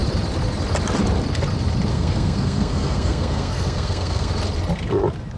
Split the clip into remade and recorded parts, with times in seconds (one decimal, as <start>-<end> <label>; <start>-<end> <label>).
0.0-1.9 recorded; 1.9-4.3 remade; 4.3-5.4 recorded